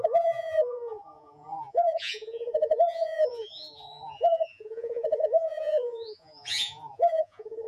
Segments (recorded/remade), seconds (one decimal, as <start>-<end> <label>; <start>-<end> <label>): 0.0-7.7 remade